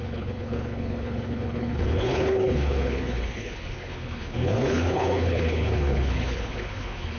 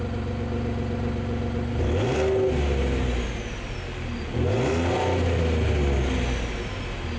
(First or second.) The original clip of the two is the second